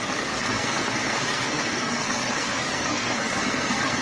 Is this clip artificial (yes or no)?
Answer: yes